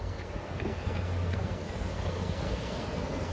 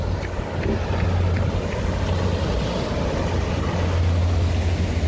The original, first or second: second